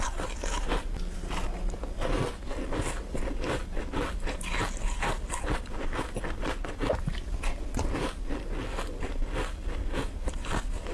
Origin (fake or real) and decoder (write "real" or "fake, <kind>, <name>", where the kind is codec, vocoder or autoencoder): real